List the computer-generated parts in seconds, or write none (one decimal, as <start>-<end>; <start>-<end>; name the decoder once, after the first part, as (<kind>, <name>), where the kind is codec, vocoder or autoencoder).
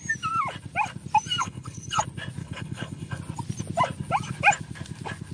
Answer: 1.4-2.0 (codec, HILCodec); 2.4-3.2